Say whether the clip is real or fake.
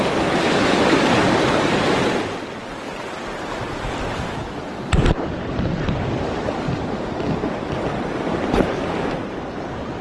real